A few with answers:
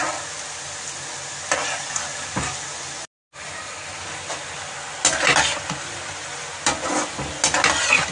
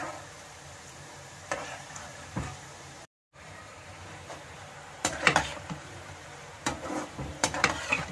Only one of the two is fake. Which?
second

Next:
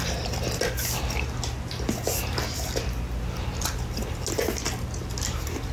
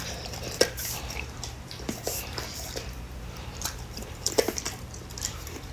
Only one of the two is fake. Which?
second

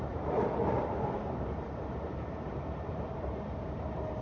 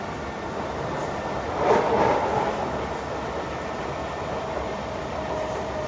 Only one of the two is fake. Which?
first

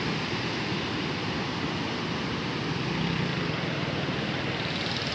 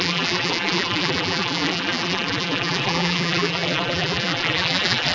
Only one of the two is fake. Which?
second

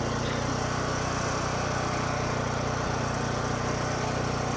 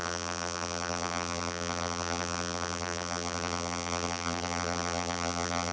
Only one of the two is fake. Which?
second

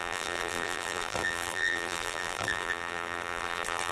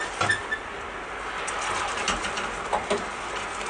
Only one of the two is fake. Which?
first